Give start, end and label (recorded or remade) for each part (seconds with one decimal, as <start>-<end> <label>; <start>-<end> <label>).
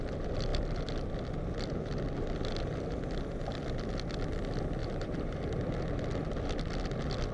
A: 0.0-4.8 recorded; 4.8-5.4 remade; 5.4-7.3 recorded